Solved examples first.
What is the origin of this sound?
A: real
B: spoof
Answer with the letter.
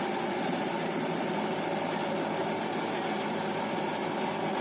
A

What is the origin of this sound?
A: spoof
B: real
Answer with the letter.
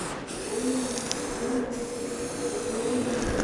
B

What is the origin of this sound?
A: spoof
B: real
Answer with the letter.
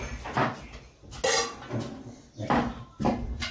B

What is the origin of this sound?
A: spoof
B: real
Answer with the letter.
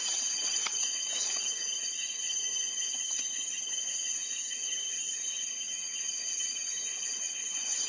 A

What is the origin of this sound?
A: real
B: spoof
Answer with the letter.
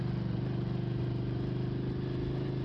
A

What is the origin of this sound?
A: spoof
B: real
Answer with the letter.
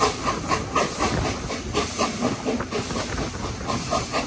B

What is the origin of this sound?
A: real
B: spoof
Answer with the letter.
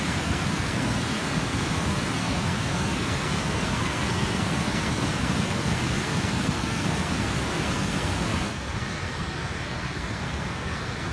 B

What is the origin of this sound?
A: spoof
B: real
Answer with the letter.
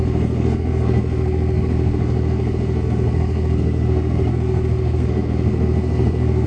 A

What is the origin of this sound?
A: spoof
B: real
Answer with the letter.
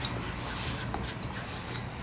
B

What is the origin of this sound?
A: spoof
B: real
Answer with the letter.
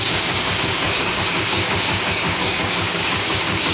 A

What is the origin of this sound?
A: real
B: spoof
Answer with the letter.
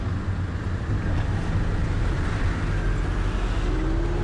A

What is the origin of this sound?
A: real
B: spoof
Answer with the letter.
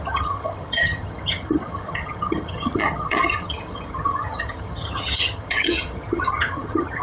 B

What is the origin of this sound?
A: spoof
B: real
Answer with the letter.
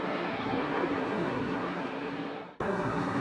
A